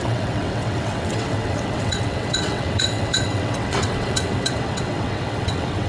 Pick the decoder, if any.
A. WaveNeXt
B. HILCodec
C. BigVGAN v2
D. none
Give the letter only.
A